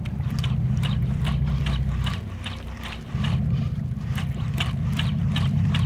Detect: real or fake fake